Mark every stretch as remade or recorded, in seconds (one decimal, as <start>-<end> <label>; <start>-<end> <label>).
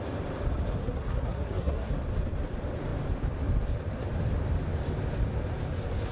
0.0-0.8 recorded; 0.8-1.9 remade; 1.9-6.1 recorded